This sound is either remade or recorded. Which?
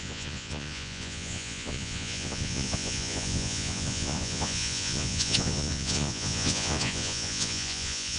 remade